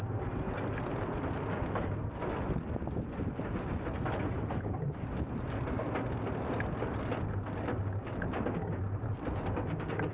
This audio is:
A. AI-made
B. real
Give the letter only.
B